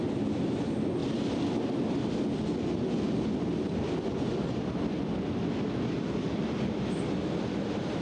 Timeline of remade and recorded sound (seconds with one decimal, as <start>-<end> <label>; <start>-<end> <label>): 0.0-8.0 recorded